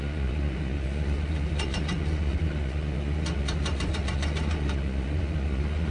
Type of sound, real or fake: fake